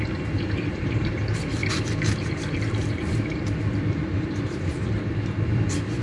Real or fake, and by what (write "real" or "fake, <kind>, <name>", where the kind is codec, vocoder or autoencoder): fake, vocoder, BigVGAN v2